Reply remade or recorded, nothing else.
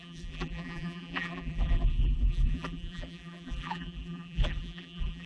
remade